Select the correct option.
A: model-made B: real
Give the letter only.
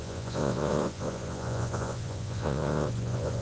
A